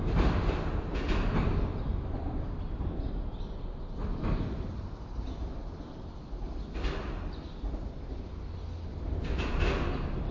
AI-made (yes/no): no